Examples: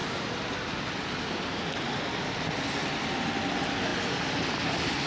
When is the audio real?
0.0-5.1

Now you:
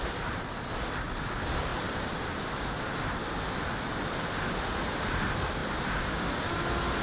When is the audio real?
0.0-7.0

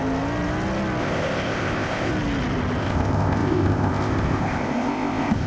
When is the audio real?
0.0-1.0; 2.1-2.8

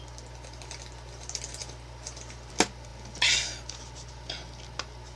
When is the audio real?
0.0-5.2